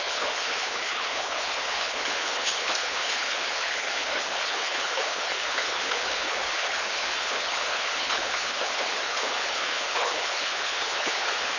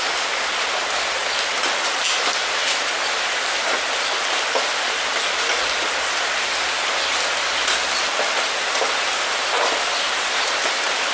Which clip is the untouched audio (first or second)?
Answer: second